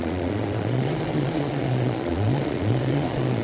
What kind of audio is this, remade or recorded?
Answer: remade